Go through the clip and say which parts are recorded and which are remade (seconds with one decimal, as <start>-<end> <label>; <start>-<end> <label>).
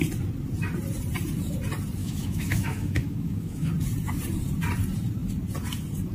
0.0-2.0 recorded; 2.0-3.7 remade; 3.7-6.1 recorded